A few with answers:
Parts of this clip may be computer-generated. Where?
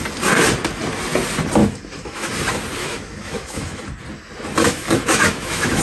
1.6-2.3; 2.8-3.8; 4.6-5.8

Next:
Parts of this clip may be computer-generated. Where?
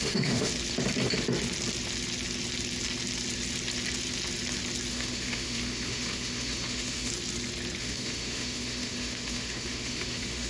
0.0-0.5; 4.9-7.1; 7.8-10.5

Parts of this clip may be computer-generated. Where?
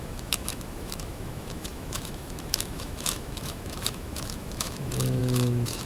0.0-5.9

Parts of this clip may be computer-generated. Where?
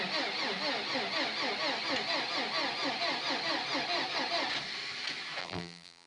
5.4-6.1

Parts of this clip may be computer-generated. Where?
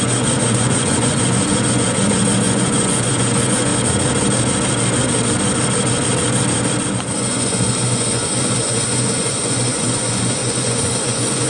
0.0-3.7; 6.9-11.5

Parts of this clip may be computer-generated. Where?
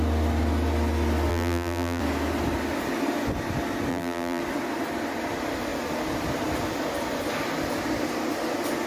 1.3-2.0; 3.9-4.4